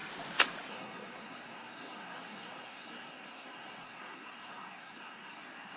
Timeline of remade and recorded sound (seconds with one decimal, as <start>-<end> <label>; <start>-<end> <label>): 0.0-0.7 recorded; 0.7-5.8 remade